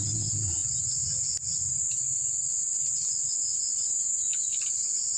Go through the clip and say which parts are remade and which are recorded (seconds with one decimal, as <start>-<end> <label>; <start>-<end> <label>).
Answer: 0.0-5.2 recorded

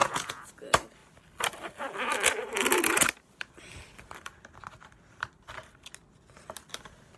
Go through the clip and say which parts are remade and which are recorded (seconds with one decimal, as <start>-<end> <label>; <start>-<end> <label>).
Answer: 0.0-0.5 remade; 0.5-7.2 recorded

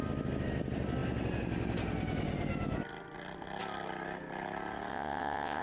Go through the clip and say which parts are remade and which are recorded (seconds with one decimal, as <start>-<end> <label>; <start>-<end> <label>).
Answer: 0.0-4.9 recorded; 4.9-5.6 remade

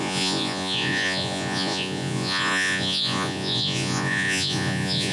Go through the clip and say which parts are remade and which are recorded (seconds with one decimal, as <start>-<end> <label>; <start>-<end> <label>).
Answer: 0.0-5.1 remade

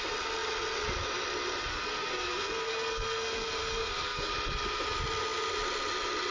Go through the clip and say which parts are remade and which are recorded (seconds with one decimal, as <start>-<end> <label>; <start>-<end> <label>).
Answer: 0.0-1.7 recorded; 1.7-4.3 remade; 4.3-6.3 recorded

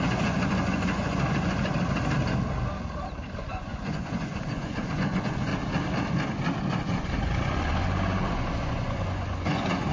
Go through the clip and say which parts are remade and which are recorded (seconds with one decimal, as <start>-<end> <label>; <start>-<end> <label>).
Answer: 0.0-1.7 remade; 1.7-3.4 recorded; 3.4-5.5 remade; 5.5-6.8 recorded; 6.8-9.9 remade